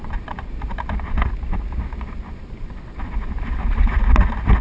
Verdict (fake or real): real